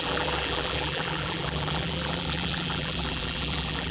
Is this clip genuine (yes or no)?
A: no